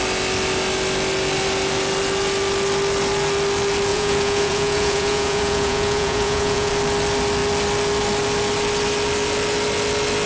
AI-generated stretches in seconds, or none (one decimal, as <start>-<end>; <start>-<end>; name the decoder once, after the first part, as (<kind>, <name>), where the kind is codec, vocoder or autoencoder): 3.9-6.7 (vocoder, Vocos)

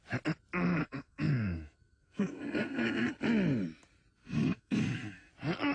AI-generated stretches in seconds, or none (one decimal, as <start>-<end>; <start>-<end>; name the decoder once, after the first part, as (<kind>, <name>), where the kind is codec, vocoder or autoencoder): 0.8-3.1 (codec, SNAC); 4.2-5.3

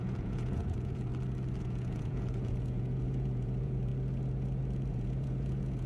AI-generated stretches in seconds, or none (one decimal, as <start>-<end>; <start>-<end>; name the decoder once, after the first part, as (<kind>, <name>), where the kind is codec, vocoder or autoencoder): 0.0-1.1 (vocoder, Vocos); 1.6-3.9; 4.9-5.9

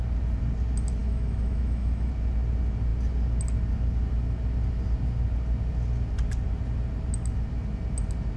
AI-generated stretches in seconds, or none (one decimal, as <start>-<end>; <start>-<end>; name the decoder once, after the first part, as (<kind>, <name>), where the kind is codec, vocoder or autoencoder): 1.0-2.1 (autoencoder, DAC-VAE)

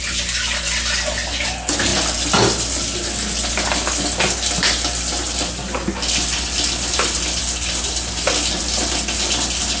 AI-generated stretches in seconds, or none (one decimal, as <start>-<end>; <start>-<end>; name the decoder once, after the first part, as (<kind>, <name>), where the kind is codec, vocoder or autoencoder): none